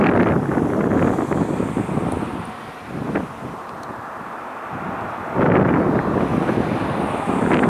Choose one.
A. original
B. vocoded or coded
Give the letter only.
A